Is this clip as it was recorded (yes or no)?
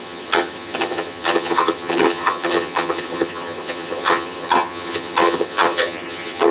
no